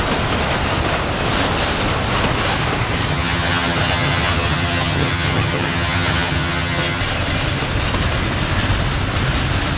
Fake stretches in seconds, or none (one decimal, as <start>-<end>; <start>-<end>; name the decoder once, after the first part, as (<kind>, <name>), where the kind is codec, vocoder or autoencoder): 3.1-7.0 (vocoder, HiFi-GAN)